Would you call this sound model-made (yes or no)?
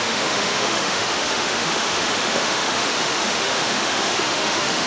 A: yes